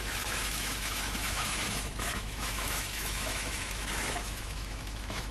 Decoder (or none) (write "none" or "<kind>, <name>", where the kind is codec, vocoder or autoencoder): autoencoder, DAC-VAE